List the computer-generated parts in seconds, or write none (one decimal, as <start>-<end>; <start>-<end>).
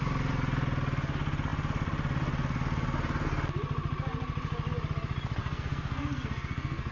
5.4-6.9